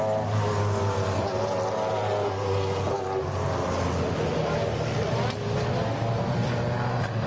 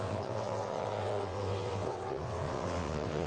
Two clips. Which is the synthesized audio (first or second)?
second